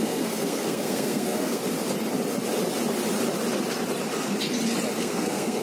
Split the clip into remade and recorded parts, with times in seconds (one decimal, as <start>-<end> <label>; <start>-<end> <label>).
0.0-1.6 remade; 1.6-5.0 recorded; 5.0-5.6 remade